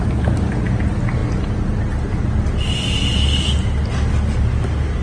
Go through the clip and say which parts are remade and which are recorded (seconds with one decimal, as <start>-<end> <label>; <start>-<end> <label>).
0.0-5.0 recorded

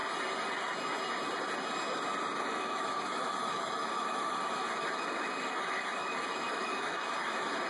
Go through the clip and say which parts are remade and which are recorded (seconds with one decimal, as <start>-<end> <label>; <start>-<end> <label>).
0.0-2.4 recorded; 2.4-7.7 remade